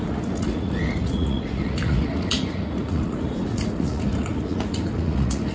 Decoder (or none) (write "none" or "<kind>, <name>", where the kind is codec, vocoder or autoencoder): vocoder, Vocos